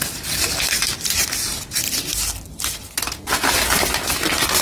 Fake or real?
real